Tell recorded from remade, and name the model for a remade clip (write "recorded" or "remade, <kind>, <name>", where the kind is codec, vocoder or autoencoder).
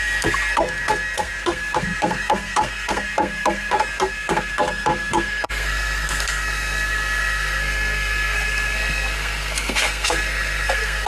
remade, codec, SNAC